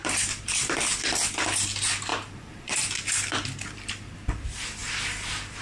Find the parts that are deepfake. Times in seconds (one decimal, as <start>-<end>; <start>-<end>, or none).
0.0-0.8; 2.1-2.7